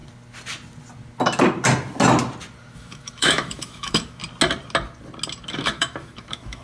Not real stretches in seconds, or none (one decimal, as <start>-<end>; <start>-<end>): 2.7-4.2; 5.5-6.6